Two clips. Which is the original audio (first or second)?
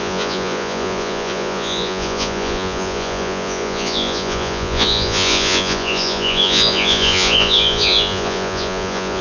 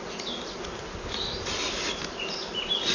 second